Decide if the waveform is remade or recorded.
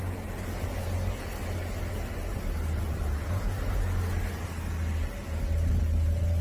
recorded